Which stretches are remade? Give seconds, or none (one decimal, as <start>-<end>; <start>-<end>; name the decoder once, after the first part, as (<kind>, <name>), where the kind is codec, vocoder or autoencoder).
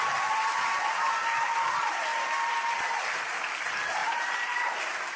4.0-4.6 (vocoder, BigVGAN v2)